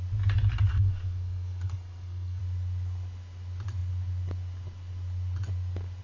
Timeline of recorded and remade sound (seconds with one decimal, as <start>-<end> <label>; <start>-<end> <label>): 0.0-0.7 recorded; 0.7-2.4 remade; 2.4-6.0 recorded